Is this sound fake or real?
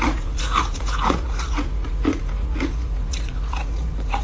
fake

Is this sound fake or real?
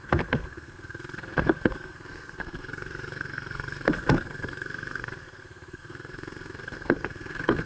fake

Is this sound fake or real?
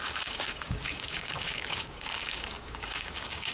fake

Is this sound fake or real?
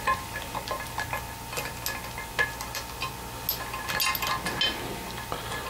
real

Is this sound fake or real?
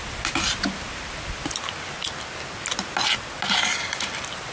real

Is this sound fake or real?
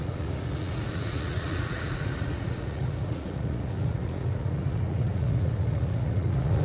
fake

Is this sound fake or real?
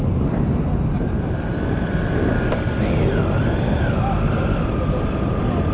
real